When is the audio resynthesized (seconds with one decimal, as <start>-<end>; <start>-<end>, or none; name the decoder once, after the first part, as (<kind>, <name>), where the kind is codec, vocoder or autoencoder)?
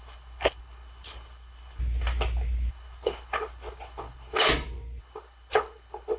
0.0-1.8 (codec, HILCodec); 2.7-4.5; 5.0-6.2